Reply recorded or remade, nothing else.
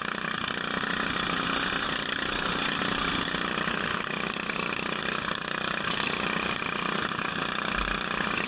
recorded